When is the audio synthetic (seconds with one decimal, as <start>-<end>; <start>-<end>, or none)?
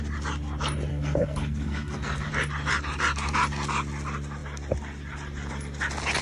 0.9-2.3